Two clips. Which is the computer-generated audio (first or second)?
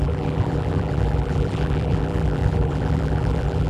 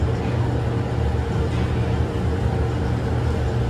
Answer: first